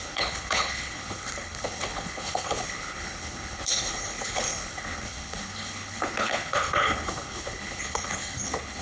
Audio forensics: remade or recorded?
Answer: remade